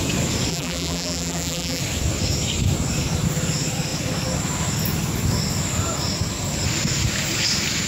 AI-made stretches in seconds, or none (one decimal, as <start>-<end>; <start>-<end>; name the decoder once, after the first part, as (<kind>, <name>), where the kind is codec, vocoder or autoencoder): 0.5-1.8 (vocoder, BigVGAN v2)